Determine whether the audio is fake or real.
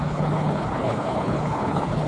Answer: fake